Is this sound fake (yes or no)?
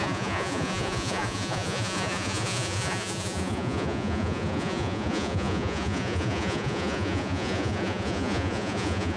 yes